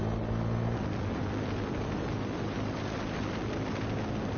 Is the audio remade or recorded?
recorded